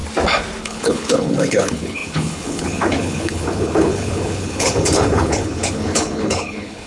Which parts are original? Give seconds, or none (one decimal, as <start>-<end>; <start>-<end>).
0.0-0.6